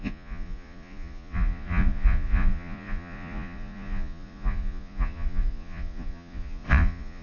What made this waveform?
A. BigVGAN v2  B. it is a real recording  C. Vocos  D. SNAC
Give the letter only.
C